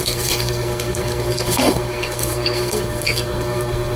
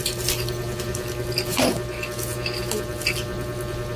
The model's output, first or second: first